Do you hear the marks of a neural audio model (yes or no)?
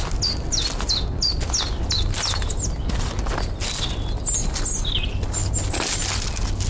no